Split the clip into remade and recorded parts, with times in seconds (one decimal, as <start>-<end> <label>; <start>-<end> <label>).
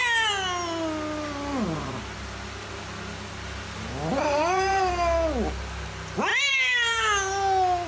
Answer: 0.0-4.1 recorded; 4.1-4.9 remade; 4.9-6.3 recorded; 6.3-7.0 remade; 7.0-7.9 recorded